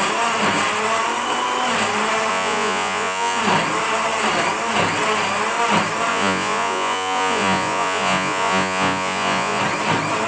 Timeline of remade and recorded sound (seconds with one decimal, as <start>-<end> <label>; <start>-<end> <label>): 0.0-2.3 recorded; 2.3-3.4 remade; 3.4-6.1 recorded; 6.1-9.6 remade; 9.6-10.3 recorded